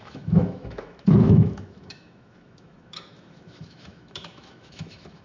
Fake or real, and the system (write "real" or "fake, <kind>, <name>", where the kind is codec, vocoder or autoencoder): fake, autoencoder, DAC-VAE